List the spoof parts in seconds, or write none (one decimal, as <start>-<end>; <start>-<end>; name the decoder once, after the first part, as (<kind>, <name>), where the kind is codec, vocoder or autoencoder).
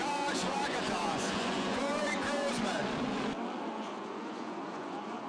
0.0-2.8 (vocoder, Vocos); 3.7-5.3